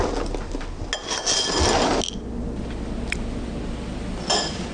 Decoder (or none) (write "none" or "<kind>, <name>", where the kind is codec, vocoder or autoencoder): none